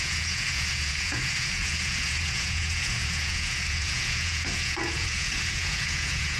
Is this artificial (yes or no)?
yes